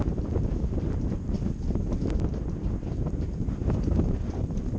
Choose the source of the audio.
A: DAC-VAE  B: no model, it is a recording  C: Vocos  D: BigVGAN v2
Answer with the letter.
B